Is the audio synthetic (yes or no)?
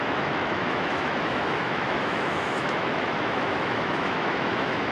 yes